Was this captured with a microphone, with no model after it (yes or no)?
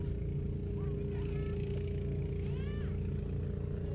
yes